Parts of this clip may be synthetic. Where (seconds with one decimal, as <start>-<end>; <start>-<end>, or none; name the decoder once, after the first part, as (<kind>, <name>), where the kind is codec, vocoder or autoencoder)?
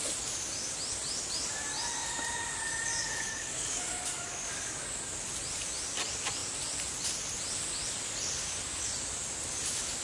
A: 2.9-5.0 (codec, DAC)